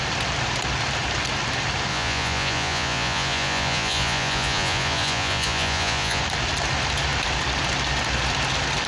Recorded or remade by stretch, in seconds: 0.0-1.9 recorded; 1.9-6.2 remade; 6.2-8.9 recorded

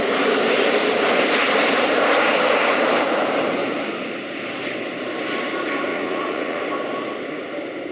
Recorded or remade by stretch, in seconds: 0.0-5.9 recorded; 5.9-6.6 remade; 6.6-7.9 recorded

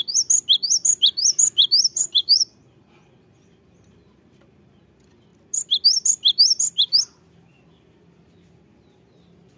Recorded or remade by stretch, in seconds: 0.0-1.9 recorded; 1.9-2.6 remade; 2.6-9.6 recorded

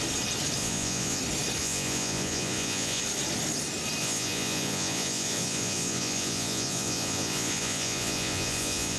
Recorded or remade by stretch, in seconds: 0.0-0.6 recorded; 0.6-1.2 remade; 1.2-1.6 recorded; 1.6-3.0 remade; 3.0-4.0 recorded; 4.0-9.0 remade